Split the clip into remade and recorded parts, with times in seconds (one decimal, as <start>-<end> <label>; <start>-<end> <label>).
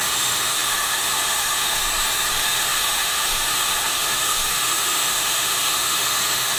0.0-1.8 remade; 1.8-2.3 recorded; 2.3-6.6 remade